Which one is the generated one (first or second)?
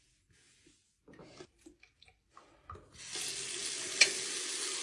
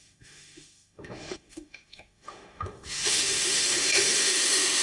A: second